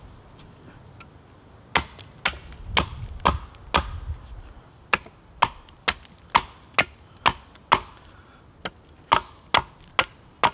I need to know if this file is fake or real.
real